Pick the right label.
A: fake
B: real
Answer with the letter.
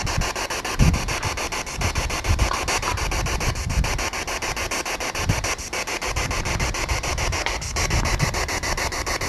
B